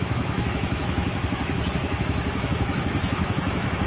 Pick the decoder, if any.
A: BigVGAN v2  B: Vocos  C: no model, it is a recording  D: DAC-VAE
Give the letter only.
D